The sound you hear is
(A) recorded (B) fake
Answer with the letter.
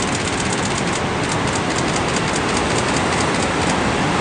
A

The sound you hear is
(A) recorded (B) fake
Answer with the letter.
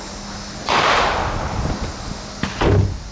A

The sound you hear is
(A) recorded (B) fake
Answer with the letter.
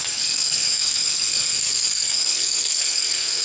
B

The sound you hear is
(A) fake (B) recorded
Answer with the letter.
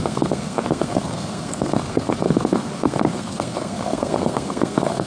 A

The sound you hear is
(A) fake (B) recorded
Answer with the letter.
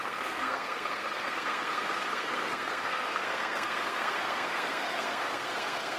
A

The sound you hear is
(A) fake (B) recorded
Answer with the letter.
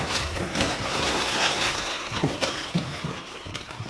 A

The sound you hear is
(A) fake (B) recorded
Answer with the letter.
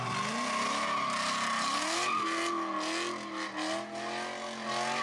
B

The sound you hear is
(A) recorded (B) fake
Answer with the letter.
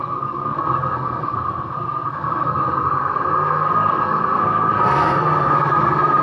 B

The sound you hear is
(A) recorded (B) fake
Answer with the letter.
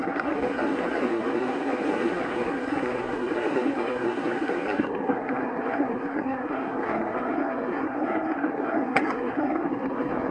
B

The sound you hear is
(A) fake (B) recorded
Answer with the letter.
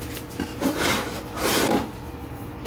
B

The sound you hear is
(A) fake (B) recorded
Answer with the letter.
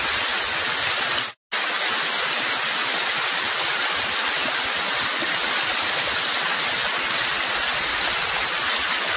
B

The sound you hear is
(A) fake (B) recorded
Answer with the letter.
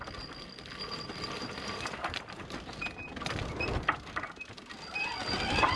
B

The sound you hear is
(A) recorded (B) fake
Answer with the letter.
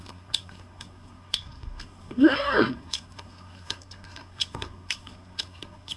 B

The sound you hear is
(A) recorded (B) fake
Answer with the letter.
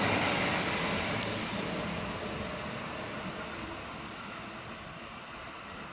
A